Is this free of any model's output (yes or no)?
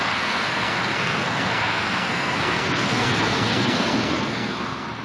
no